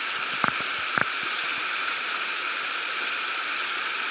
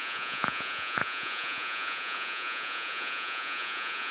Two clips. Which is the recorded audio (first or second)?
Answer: first